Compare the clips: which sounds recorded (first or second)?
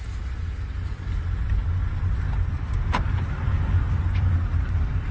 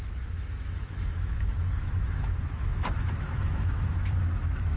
first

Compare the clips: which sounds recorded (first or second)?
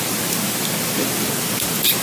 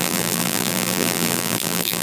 first